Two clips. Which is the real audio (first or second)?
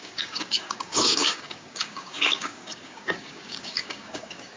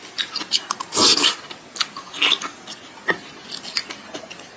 second